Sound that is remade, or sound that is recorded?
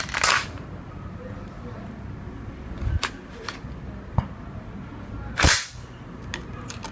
recorded